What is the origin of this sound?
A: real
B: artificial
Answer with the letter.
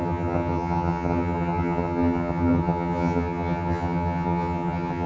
B